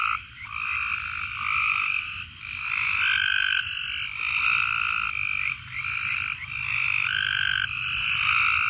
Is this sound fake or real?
fake